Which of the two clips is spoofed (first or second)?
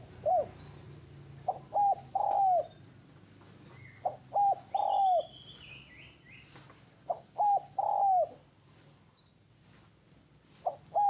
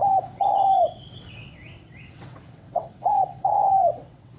second